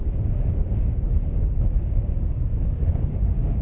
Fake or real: fake